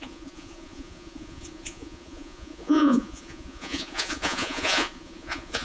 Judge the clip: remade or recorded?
remade